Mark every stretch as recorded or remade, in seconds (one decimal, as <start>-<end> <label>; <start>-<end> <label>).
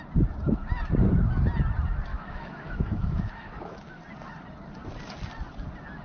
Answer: 0.0-2.1 recorded; 2.1-3.7 remade; 3.7-6.0 recorded